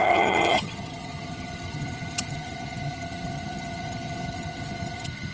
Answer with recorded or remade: remade